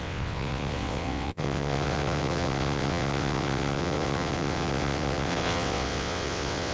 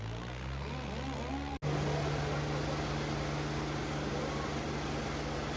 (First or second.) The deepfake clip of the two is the first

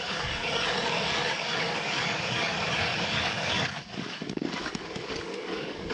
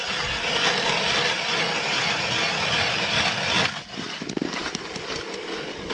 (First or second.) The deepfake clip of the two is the first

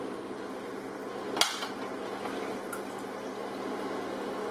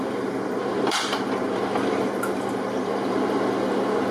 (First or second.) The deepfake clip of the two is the second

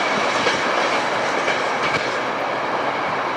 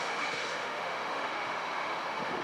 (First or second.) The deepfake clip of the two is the second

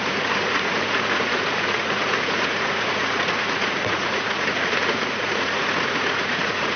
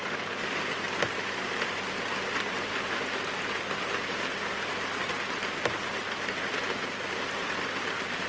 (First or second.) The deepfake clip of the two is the first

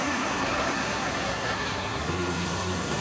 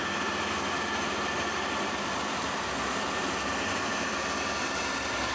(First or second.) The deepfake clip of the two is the first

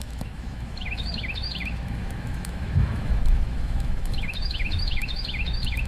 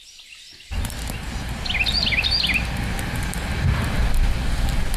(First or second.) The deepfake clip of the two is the first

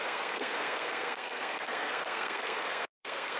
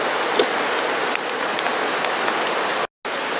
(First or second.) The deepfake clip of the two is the first